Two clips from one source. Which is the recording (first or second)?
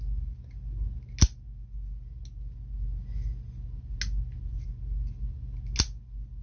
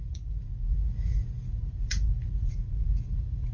first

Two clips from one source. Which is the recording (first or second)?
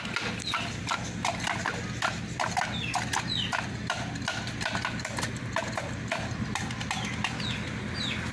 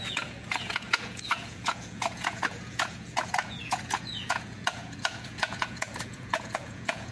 first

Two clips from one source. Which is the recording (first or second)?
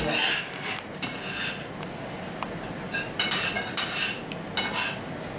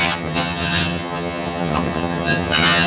first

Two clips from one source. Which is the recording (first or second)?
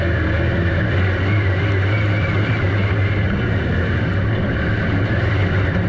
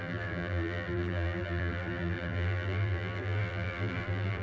first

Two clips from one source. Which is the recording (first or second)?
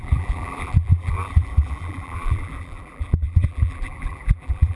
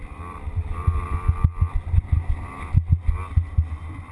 second